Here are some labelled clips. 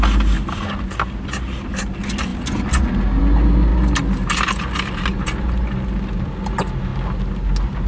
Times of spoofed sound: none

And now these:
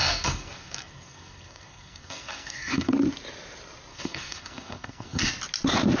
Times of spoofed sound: 0.0-2.9 (codec, SNAC); 3.9-5.3

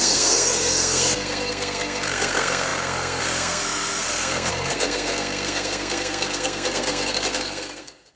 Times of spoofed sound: 0.0-8.2 (codec, SNAC)

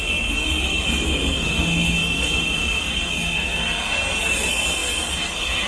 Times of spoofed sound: 0.0-5.7 (codec, SNAC)

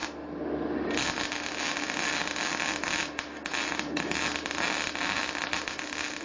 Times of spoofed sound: none

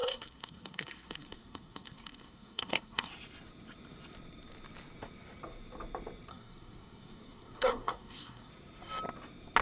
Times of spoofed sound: 0.0-3.1 (codec, SNAC); 6.3-8.5